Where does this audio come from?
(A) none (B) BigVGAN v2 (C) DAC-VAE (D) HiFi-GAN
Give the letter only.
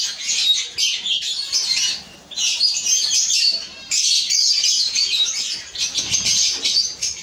B